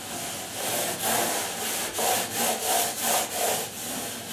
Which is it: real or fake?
real